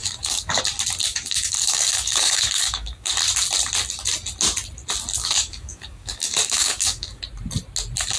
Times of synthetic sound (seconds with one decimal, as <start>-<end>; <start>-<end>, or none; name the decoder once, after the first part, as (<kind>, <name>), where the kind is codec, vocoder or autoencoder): 0.0-0.6 (codec, DAC); 1.1-3.1; 5.2-7.2